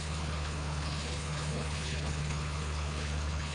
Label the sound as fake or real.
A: fake